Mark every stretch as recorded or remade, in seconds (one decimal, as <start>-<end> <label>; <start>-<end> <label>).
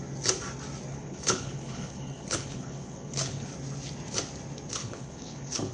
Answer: 0.0-0.9 recorded; 0.9-3.5 remade; 3.5-4.8 recorded; 4.8-5.7 remade